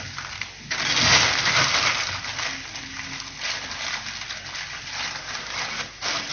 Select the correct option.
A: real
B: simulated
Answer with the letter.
A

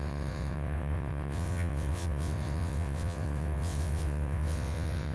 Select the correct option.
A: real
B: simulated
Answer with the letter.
B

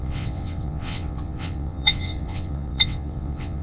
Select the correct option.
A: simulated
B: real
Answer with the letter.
A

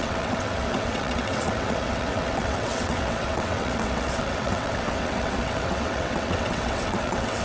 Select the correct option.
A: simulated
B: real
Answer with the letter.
A